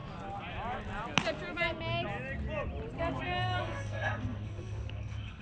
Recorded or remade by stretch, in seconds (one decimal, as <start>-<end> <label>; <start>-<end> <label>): 0.0-3.2 recorded; 3.2-5.4 remade